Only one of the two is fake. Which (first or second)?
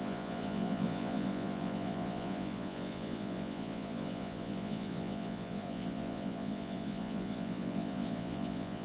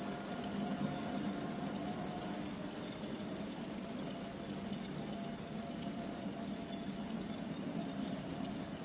first